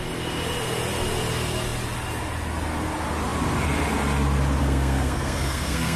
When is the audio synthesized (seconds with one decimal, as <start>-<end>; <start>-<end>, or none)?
4.6-6.0